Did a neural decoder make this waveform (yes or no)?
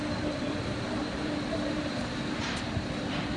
yes